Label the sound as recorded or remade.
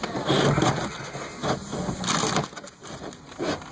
recorded